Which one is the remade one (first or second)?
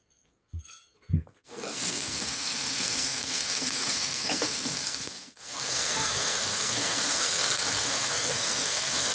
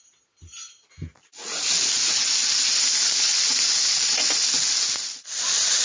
first